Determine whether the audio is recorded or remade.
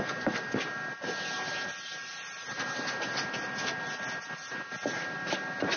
recorded